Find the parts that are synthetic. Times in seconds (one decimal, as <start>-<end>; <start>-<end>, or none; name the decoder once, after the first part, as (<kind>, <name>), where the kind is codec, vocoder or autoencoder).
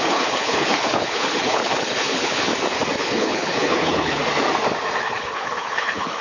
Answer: 0.0-2.5 (codec, HILCodec); 3.0-4.2; 5.0-6.2